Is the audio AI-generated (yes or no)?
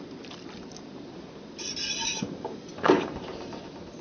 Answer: no